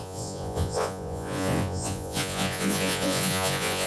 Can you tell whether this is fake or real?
fake